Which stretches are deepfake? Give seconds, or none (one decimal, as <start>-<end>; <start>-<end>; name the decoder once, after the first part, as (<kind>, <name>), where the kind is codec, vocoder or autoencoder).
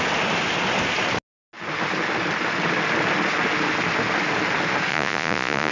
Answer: 4.9-5.7 (vocoder, Vocos)